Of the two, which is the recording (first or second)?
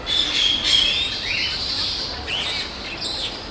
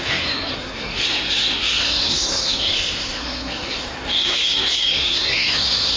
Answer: first